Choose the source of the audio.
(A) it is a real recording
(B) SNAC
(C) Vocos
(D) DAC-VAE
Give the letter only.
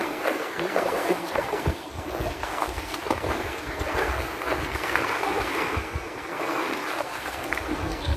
B